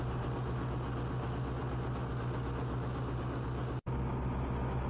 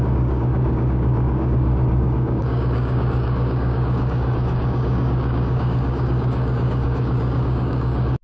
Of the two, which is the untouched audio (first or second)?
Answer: first